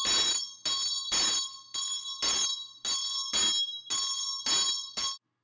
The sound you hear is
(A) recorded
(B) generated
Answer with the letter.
A